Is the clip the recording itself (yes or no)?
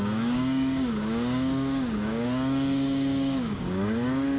no